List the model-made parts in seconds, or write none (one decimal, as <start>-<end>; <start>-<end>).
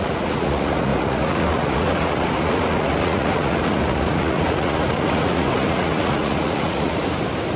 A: 0.0-7.0